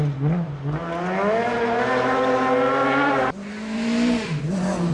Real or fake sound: real